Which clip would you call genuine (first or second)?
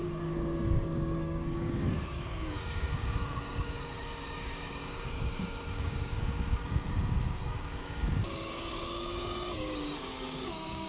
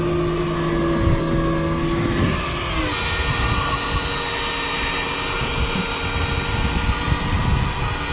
second